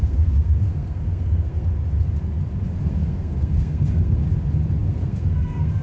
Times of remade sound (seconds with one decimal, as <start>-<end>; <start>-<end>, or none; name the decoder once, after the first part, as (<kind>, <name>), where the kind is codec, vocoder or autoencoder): 0.0-1.7 (codec, SNAC); 2.8-4.2; 4.8-5.8